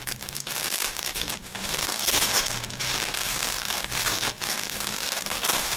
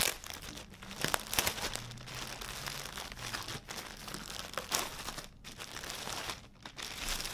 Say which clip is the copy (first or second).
first